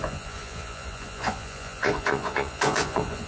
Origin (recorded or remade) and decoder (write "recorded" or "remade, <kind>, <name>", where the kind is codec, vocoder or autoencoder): remade, vocoder, Vocos